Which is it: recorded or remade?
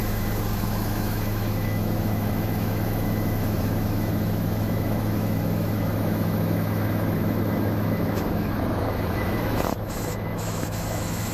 remade